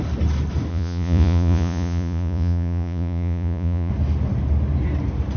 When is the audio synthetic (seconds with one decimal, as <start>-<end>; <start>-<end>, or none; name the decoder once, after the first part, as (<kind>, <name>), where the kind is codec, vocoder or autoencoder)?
0.7-3.9 (vocoder, Vocos)